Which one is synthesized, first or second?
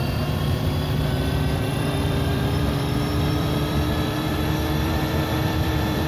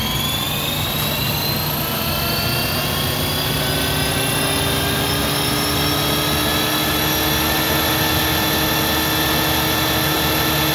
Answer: first